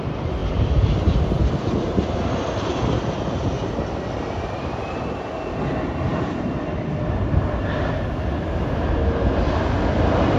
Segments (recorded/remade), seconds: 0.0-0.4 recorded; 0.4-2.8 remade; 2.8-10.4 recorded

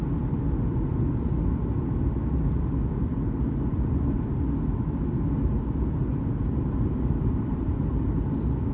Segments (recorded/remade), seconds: 0.0-3.7 recorded; 3.7-4.4 remade; 4.4-6.1 recorded; 6.1-7.7 remade; 7.7-8.7 recorded

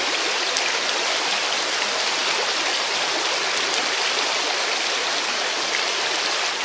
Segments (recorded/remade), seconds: 0.0-2.2 recorded; 2.2-4.9 remade; 4.9-6.6 recorded

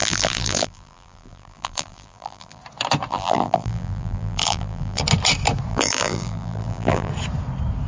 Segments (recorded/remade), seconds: 0.0-2.6 remade; 2.6-3.1 recorded; 3.1-5.0 remade; 5.0-5.7 recorded; 5.7-7.1 remade; 7.1-7.9 recorded

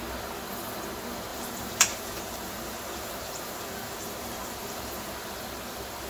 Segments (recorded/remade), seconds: 0.0-1.3 recorded; 1.3-5.0 remade; 5.0-6.1 recorded

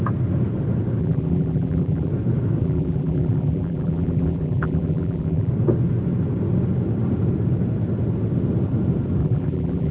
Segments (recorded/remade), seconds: 0.0-1.0 recorded; 1.0-2.1 remade; 2.1-2.6 recorded; 2.6-5.5 remade; 5.5-9.2 recorded; 9.2-9.9 remade